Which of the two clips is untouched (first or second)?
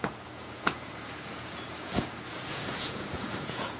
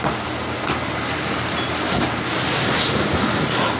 second